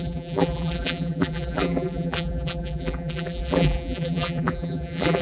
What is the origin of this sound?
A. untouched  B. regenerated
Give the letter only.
B